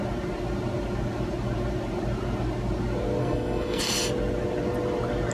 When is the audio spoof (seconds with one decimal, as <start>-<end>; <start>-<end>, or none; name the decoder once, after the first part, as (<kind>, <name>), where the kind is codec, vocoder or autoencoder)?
3.2-3.8 (codec, SNAC)